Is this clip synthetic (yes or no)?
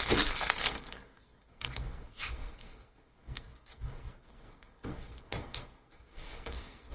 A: yes